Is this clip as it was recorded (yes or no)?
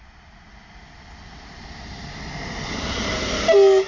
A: yes